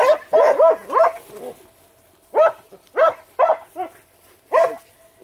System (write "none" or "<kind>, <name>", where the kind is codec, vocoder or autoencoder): none